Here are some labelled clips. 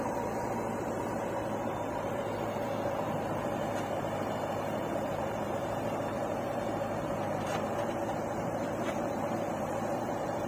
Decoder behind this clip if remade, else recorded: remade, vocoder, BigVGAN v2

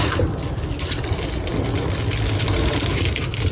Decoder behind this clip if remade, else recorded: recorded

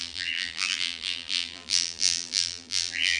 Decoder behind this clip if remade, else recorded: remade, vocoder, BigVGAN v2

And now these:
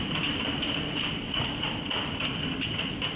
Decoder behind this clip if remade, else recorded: remade, vocoder, BigVGAN v2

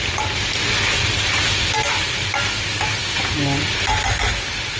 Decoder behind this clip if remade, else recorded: recorded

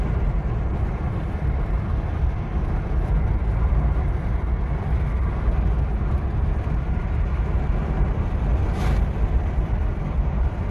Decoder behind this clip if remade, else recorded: remade, vocoder, BigVGAN v2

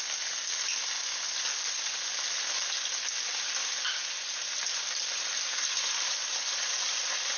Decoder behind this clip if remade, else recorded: recorded